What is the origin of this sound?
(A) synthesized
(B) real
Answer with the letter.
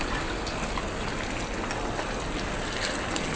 B